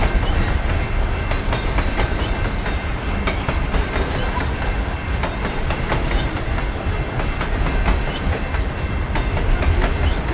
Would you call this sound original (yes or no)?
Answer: no